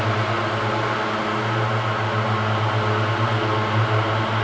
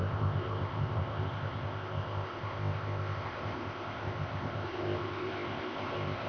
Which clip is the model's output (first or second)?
second